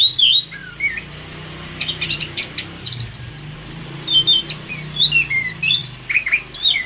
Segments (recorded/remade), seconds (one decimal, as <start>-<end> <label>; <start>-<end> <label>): 0.0-0.6 recorded; 0.6-4.7 remade; 4.7-5.8 recorded; 5.8-6.9 remade